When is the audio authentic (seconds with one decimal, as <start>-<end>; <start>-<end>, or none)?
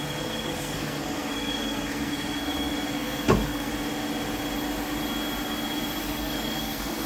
3.7-6.0